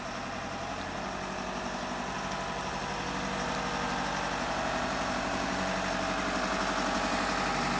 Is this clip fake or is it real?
real